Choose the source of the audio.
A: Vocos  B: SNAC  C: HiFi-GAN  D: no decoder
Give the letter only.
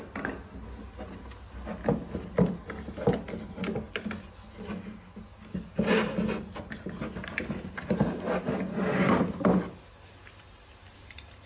D